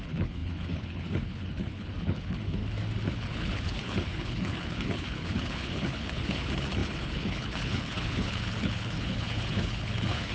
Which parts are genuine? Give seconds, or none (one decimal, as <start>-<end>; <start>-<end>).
2.6-3.1